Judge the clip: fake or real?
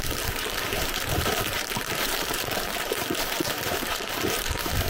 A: fake